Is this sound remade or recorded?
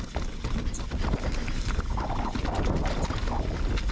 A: recorded